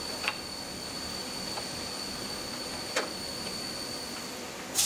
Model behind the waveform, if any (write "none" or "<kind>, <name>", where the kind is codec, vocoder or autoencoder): none